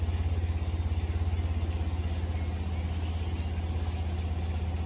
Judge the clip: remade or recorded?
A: recorded